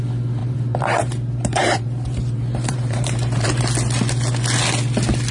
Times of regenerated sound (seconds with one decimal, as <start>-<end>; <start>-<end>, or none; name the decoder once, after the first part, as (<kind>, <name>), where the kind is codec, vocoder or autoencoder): 0.4-3.6 (vocoder, BigVGAN v2)